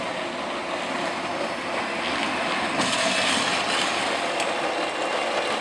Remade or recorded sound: recorded